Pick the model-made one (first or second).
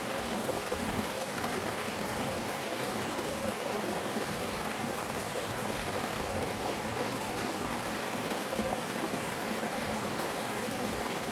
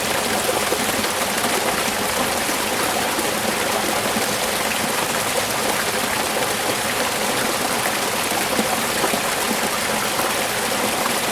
first